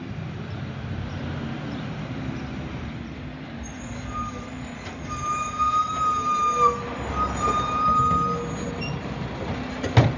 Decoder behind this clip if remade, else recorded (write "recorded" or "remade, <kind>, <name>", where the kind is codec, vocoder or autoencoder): recorded